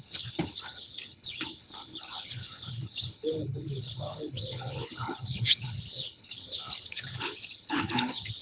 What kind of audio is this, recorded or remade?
remade